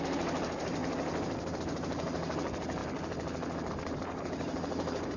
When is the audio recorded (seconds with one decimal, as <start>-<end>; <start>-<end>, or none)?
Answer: 0.8-1.6; 2.8-3.7